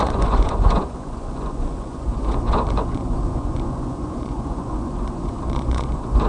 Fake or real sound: fake